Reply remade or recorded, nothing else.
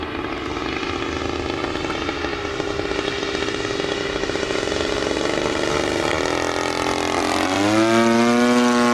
recorded